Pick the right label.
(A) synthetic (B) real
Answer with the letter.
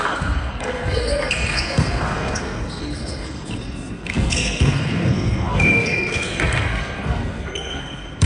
A